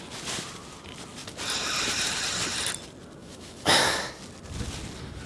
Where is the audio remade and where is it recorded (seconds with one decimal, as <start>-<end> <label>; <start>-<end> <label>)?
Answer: 0.0-3.2 recorded; 3.2-4.1 remade; 4.1-5.3 recorded